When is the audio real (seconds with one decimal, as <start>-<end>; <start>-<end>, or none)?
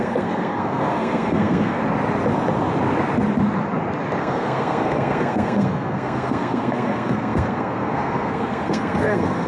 1.8-4.2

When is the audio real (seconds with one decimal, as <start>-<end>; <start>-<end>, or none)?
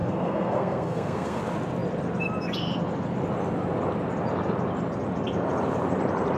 1.4-6.4